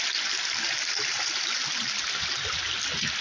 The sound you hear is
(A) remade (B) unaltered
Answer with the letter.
B